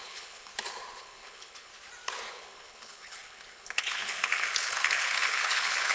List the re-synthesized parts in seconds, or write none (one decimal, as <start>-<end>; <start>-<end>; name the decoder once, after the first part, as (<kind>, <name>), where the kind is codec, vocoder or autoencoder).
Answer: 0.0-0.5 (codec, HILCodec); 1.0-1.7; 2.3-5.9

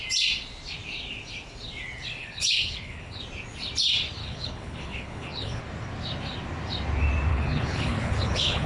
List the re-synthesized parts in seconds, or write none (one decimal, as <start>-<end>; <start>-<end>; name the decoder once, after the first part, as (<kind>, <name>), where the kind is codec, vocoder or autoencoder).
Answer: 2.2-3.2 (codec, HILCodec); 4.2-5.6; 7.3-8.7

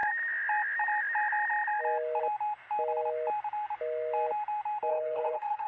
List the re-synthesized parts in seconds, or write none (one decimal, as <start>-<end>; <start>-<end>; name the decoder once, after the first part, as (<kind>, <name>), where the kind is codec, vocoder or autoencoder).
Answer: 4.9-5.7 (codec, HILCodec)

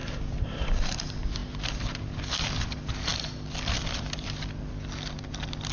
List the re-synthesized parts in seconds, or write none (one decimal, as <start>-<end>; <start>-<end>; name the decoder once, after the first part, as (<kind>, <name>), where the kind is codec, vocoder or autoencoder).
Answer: none

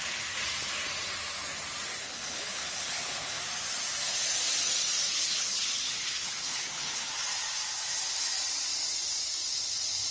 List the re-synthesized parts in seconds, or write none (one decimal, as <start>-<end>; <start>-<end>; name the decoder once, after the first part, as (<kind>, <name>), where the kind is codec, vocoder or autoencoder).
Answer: 2.0-3.4 (codec, HILCodec); 5.1-7.1

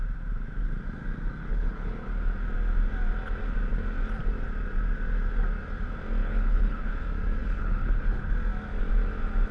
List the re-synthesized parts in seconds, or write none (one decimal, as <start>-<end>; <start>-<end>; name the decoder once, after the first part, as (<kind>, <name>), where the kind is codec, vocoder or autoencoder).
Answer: 1.4-2.1 (codec, HILCodec); 6.2-6.9; 7.4-8.3

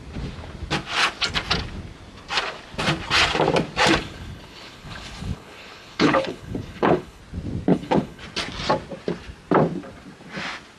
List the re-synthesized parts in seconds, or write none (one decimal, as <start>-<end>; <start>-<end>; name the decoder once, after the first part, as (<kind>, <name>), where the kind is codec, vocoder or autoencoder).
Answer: 4.0-7.2 (codec, HILCodec); 7.7-8.2